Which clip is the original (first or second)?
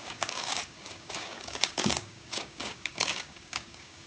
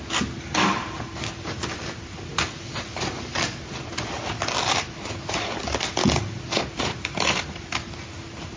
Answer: second